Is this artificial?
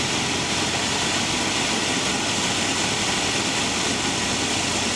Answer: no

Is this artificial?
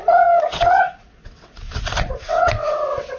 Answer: yes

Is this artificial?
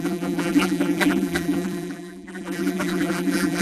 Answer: yes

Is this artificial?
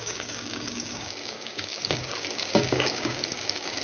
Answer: yes